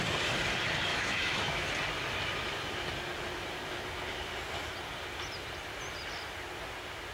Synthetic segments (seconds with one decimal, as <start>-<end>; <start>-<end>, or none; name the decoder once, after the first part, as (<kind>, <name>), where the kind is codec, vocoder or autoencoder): 0.9-1.7 (autoencoder, DAC-VAE)